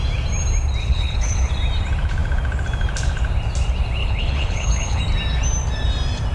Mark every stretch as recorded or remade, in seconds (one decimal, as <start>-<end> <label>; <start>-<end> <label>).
0.0-0.8 recorded; 0.8-1.5 remade; 1.5-4.0 recorded; 4.0-5.0 remade; 5.0-6.3 recorded